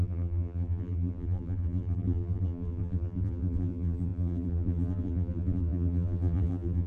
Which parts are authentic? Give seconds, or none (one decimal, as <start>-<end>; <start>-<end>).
none